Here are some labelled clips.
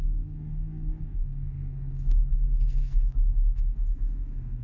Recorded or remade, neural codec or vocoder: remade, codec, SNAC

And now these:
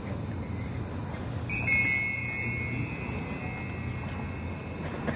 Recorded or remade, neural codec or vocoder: recorded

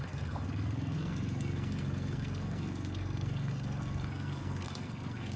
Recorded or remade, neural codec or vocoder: remade, codec, SNAC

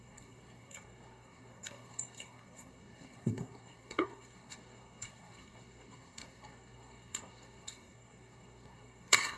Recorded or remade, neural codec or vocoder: remade, codec, SNAC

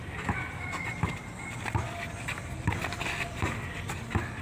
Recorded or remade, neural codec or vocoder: recorded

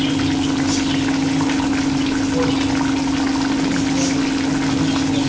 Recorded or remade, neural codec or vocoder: recorded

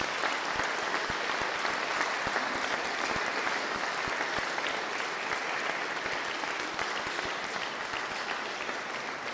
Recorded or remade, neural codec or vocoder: recorded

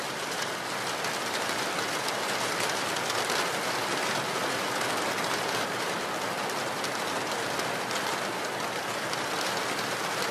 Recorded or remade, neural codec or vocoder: recorded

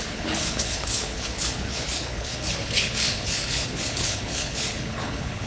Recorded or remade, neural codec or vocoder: remade, codec, HILCodec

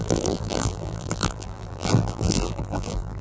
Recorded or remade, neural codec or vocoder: remade, vocoder, BigVGAN v2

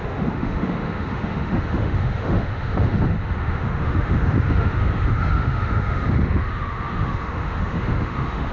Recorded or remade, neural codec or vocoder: remade, autoencoder, DAC-VAE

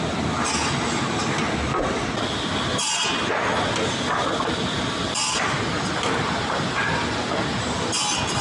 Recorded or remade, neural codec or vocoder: recorded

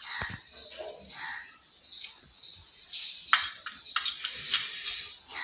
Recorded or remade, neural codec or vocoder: recorded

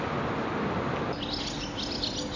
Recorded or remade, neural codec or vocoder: recorded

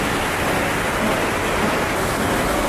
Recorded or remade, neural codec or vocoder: recorded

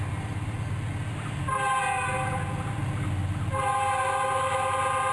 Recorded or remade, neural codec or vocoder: recorded